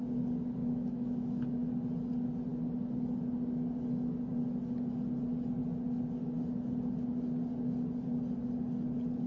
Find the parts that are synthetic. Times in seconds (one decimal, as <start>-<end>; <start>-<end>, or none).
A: 0.6-1.7